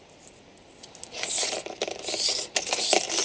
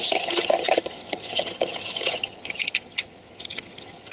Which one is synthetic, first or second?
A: second